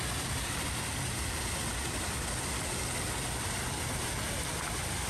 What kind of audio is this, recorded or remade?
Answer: recorded